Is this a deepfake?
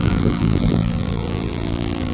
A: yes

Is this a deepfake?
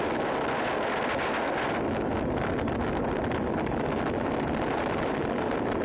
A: no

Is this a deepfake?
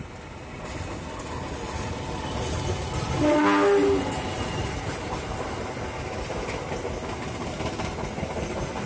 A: no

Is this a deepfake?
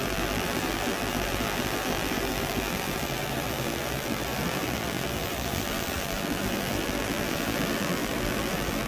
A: yes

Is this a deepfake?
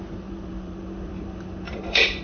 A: yes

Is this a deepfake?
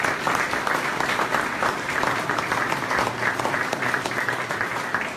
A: yes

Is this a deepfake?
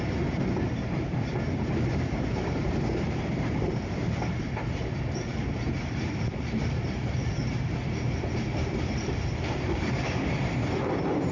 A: yes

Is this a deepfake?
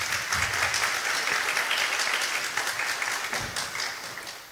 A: no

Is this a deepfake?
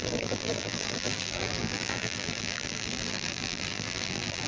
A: yes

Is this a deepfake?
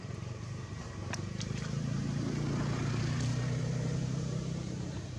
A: yes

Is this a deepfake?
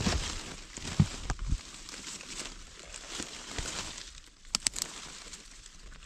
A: no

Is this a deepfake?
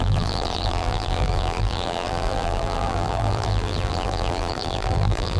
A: yes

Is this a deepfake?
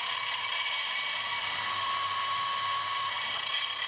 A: yes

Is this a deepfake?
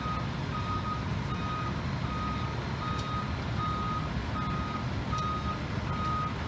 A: no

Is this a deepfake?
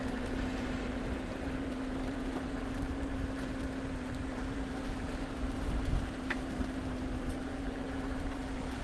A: yes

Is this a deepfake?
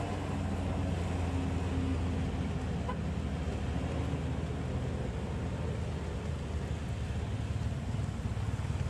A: no